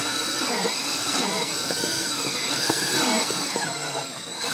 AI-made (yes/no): yes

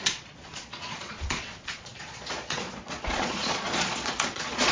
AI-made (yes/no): yes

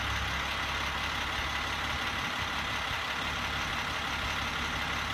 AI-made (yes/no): no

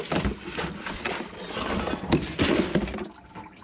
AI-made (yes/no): no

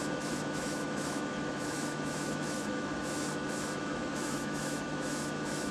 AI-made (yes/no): yes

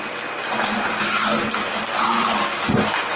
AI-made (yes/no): no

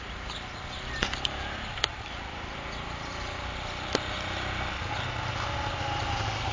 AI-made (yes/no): no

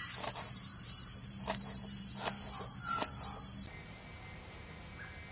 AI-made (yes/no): no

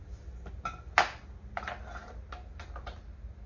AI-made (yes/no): no